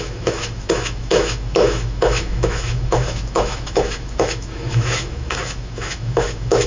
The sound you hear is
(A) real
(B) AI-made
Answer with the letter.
B